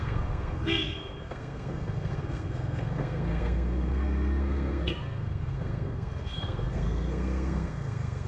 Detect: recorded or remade remade